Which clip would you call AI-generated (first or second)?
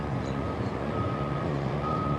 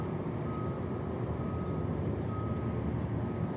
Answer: first